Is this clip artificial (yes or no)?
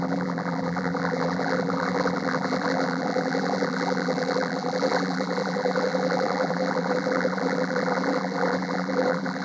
yes